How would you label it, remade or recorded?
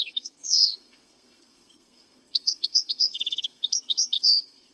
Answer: remade